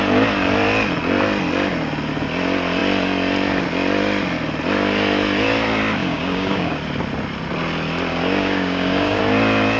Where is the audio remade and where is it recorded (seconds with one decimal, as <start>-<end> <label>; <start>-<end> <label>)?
0.0-6.0 recorded; 6.0-6.8 remade; 6.8-8.1 recorded; 8.1-9.2 remade; 9.2-9.8 recorded